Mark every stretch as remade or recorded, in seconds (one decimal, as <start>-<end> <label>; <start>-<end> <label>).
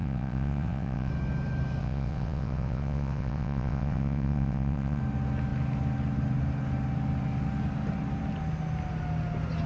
0.0-1.1 remade; 1.1-1.8 recorded; 1.8-5.0 remade; 5.0-9.7 recorded